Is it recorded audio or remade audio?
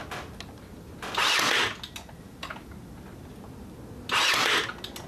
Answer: recorded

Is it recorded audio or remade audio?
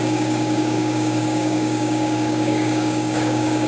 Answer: remade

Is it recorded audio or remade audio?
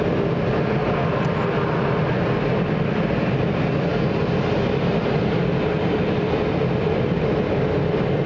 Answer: recorded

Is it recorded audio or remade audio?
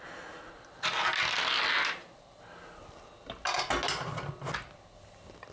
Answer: recorded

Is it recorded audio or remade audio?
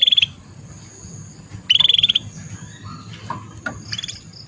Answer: recorded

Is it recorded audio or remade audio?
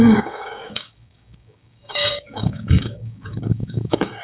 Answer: remade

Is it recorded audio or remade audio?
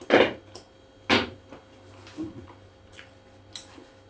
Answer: recorded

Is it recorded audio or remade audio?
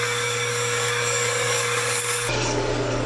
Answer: remade